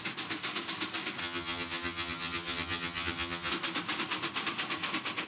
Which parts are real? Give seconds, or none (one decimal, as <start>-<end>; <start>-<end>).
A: 0.0-1.2; 3.5-5.3